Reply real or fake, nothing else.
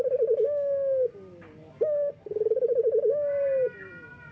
real